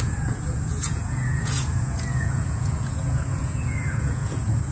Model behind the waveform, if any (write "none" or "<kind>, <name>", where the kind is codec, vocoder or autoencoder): vocoder, Vocos